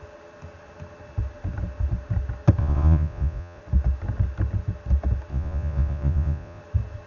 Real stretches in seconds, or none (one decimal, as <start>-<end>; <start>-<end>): 0.0-2.6; 3.6-5.3; 6.6-7.1